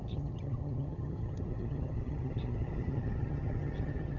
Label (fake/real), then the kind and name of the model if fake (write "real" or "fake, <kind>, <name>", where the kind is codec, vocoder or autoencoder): fake, vocoder, HiFi-GAN